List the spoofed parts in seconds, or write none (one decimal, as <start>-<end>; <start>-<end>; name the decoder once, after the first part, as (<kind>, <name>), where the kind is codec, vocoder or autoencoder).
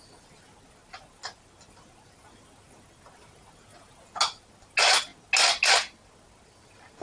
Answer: none